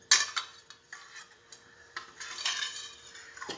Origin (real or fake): real